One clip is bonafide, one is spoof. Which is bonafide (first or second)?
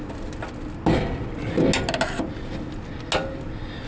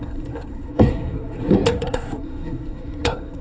first